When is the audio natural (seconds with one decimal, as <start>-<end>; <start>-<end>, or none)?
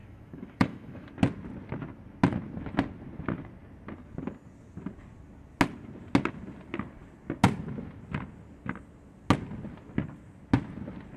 1.1-11.2